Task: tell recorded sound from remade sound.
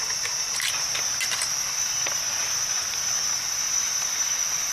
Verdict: recorded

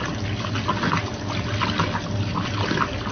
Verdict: recorded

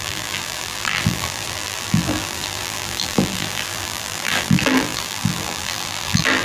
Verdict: remade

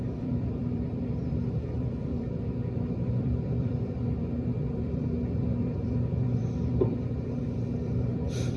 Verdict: remade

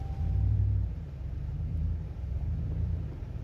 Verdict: remade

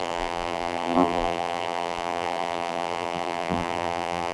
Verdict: remade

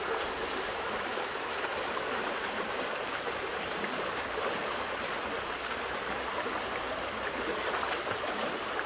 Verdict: remade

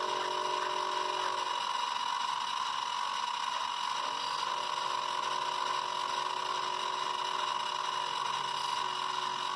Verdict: recorded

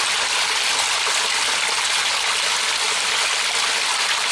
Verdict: recorded